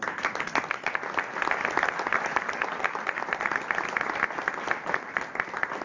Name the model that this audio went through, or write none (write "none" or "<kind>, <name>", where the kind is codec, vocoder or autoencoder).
none